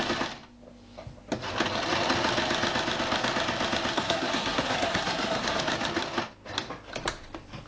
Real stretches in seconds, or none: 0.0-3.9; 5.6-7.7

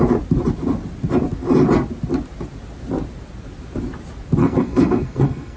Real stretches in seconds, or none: 0.0-4.4

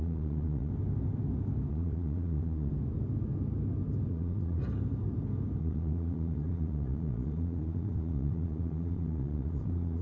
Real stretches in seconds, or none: 0.7-1.7; 2.7-4.1; 4.6-5.6